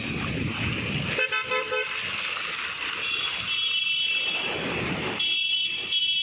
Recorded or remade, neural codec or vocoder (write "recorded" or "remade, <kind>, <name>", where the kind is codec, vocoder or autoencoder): recorded